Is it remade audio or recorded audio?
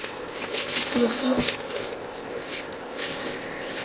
remade